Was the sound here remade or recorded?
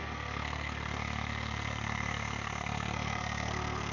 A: remade